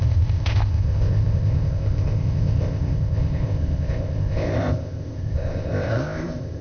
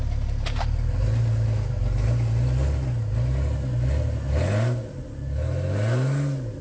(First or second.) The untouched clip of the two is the second